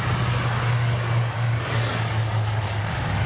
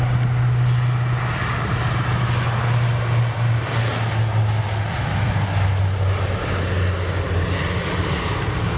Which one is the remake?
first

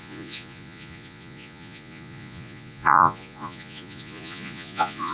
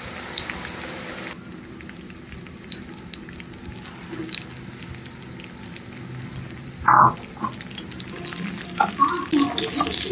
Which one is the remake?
first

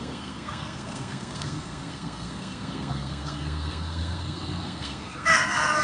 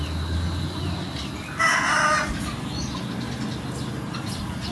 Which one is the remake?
first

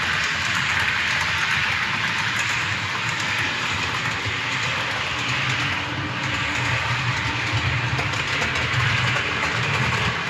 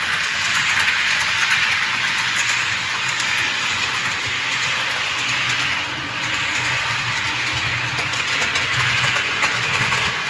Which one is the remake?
second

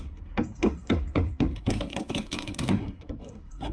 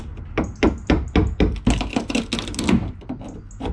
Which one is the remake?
first